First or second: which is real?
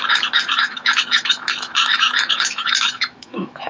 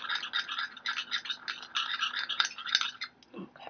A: second